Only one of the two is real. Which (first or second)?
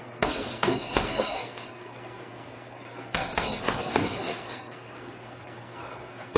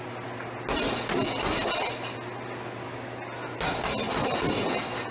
second